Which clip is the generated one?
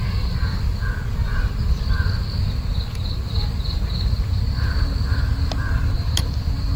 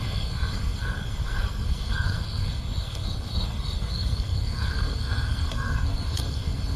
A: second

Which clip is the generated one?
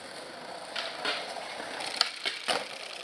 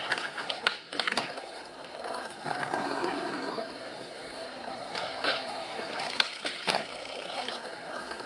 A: second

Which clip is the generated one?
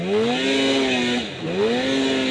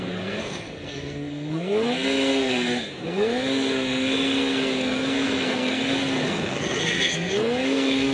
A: second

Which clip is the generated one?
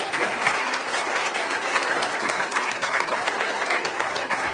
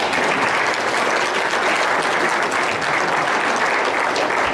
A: first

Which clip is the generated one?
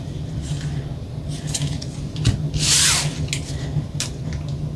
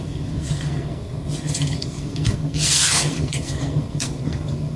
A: second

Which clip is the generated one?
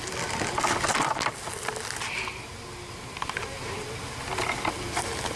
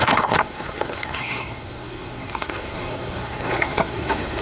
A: second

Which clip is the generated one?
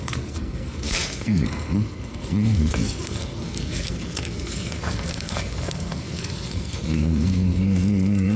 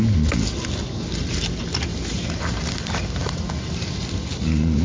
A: first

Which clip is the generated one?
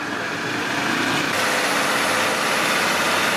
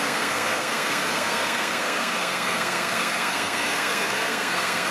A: second